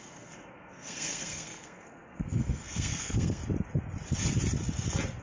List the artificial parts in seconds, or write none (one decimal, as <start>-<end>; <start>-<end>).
0.0-3.4